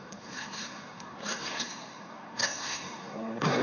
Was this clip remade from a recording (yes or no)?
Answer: yes